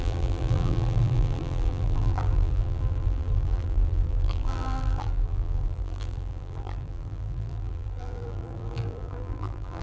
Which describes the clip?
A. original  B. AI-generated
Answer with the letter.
B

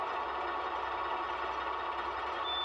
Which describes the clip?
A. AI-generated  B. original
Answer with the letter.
B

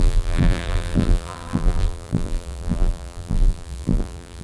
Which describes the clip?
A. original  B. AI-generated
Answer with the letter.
B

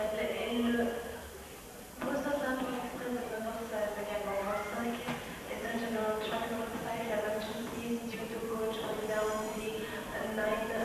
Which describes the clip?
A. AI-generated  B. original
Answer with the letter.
A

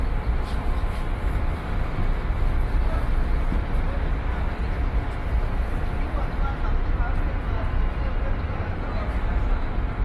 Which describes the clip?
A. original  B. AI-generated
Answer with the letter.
B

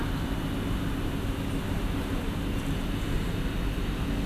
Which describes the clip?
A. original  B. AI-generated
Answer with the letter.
A